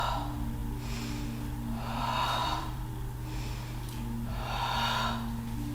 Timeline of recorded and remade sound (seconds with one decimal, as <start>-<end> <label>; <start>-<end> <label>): 0.0-2.4 recorded; 2.4-2.9 remade; 2.9-5.7 recorded